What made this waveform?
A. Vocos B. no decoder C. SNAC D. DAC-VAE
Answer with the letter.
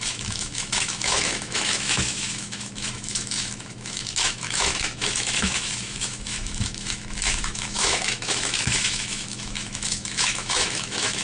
D